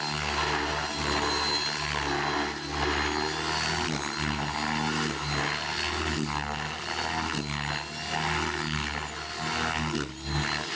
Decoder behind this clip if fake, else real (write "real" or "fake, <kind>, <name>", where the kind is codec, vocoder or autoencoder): real